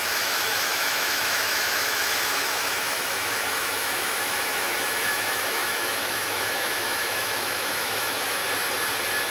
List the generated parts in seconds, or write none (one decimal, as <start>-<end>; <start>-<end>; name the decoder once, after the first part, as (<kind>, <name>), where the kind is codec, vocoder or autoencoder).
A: 0.0-8.4 (autoencoder, DAC-VAE)